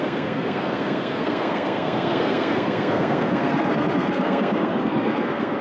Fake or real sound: fake